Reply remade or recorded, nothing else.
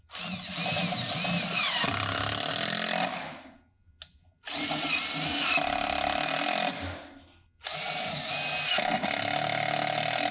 recorded